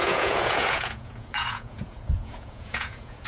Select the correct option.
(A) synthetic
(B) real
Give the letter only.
A